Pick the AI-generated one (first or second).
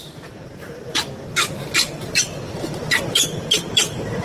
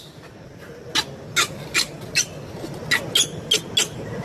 first